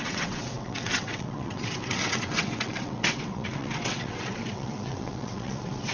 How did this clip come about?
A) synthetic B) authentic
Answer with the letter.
A